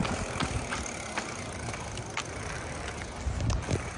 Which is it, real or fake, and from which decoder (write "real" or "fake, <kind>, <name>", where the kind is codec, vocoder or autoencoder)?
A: real